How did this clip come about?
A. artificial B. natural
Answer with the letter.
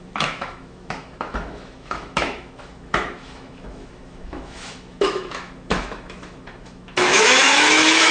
A